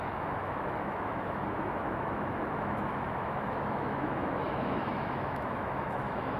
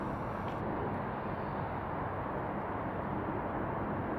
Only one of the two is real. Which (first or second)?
second